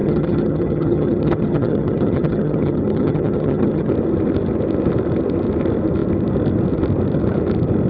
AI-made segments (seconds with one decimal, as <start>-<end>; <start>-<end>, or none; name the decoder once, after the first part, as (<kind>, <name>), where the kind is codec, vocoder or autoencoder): 0.0-3.9 (vocoder, HiFi-GAN)